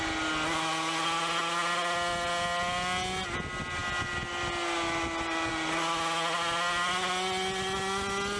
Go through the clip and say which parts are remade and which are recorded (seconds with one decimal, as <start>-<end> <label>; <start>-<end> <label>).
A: 0.0-8.4 recorded